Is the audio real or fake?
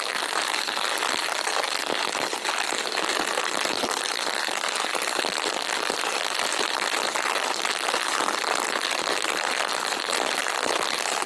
fake